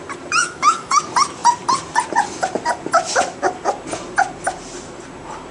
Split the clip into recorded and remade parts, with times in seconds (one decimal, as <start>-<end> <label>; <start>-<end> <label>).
0.0-0.4 recorded; 0.4-1.0 remade; 1.0-5.5 recorded